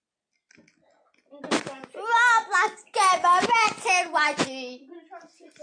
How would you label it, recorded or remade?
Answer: recorded